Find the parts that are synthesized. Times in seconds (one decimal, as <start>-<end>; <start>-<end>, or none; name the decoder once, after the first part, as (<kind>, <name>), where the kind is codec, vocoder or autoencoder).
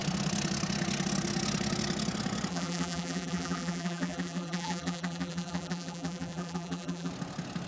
2.5-7.1 (vocoder, BigVGAN v2)